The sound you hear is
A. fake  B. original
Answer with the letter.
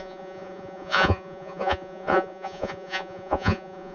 A